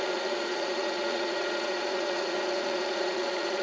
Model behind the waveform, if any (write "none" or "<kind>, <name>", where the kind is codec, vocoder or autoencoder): vocoder, Vocos